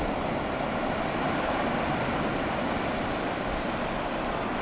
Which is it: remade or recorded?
recorded